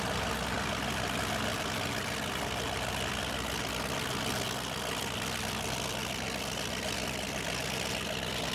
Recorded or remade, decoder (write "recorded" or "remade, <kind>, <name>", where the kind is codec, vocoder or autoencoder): recorded